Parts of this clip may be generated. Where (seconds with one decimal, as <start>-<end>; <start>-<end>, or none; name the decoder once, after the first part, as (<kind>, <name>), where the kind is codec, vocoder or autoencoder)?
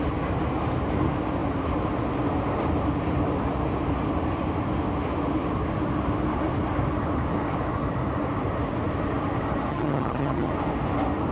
9.7-10.5 (vocoder, HiFi-GAN)